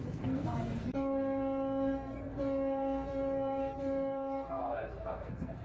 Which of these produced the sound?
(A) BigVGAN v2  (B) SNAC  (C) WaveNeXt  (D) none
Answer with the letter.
B